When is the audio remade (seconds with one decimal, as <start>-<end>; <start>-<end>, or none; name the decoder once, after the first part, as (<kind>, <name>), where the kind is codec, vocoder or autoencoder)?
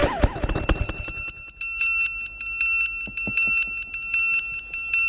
0.0-0.9 (vocoder, BigVGAN v2)